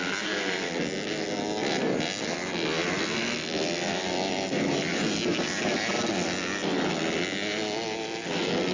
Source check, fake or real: real